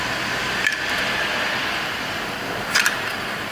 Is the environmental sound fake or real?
fake